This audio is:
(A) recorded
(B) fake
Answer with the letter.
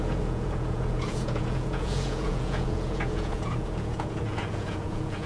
B